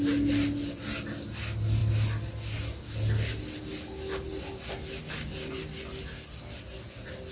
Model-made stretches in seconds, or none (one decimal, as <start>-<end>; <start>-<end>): none